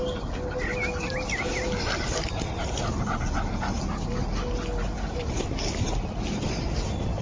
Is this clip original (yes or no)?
yes